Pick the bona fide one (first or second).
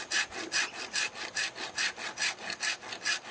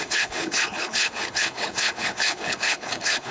first